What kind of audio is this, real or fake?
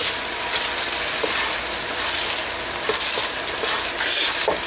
real